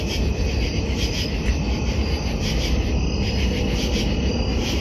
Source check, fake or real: real